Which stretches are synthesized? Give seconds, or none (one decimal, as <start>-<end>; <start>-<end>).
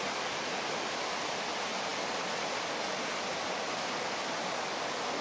none